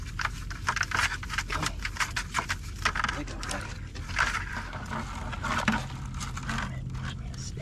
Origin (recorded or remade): recorded